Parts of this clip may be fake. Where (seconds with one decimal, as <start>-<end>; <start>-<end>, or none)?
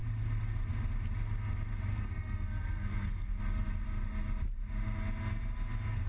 1.9-3.4